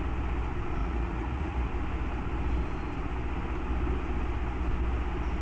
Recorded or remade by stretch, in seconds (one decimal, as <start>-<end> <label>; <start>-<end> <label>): 0.0-0.8 recorded; 0.8-1.7 remade; 1.7-5.4 recorded